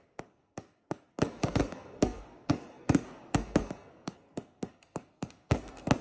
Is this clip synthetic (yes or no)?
yes